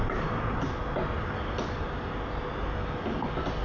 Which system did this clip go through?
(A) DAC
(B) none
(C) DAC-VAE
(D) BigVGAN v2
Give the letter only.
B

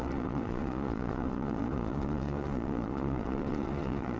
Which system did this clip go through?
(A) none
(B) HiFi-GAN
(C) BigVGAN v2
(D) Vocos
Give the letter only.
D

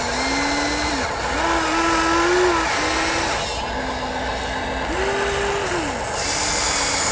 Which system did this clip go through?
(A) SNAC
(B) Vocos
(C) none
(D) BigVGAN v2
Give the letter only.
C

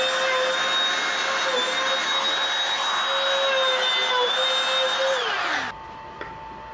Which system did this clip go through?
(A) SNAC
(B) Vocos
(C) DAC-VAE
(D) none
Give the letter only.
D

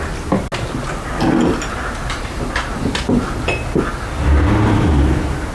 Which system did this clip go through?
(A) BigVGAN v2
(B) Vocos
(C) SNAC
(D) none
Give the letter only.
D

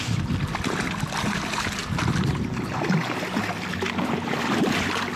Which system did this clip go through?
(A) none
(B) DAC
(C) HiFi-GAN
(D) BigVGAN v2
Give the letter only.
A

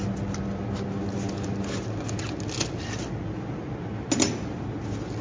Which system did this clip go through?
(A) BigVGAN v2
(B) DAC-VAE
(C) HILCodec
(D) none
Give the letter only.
D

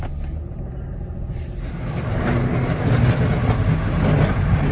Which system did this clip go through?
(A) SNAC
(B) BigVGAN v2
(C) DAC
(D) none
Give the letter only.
D